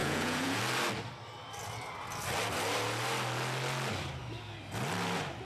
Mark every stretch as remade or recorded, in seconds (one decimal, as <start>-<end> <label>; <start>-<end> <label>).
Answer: 0.0-0.6 remade; 0.6-5.4 recorded